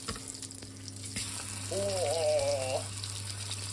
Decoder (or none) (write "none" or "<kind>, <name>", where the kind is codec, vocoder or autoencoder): none